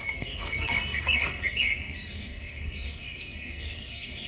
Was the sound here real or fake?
fake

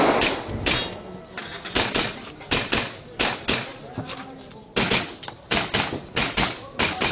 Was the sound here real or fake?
real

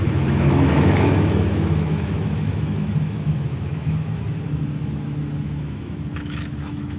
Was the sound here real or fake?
fake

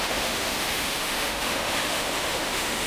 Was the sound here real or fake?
fake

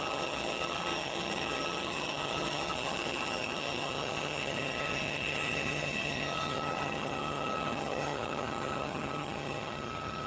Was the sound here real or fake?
fake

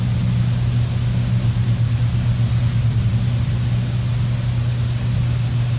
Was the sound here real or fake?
real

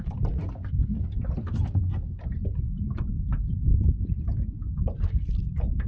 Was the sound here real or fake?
real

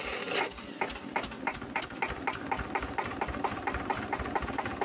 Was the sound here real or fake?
real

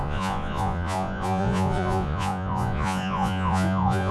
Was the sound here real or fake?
fake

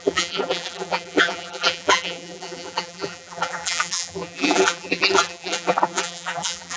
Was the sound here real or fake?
fake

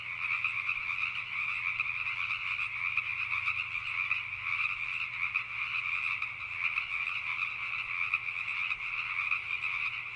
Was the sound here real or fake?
real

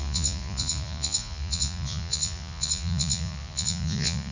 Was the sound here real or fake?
fake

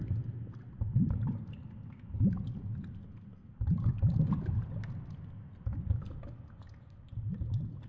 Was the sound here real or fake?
real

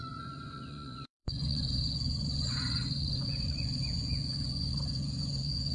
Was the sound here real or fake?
fake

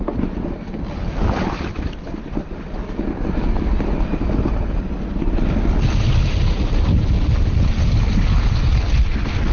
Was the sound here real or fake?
real